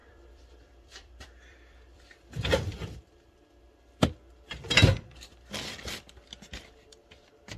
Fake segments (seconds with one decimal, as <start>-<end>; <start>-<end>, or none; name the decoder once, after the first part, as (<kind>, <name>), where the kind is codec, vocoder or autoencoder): 0.0-3.6 (vocoder, BigVGAN v2)